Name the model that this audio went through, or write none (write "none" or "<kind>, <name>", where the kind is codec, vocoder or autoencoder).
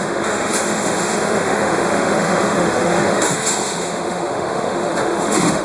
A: autoencoder, DAC-VAE